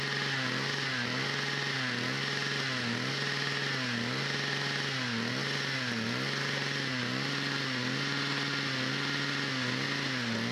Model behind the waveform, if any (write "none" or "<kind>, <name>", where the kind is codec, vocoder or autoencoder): none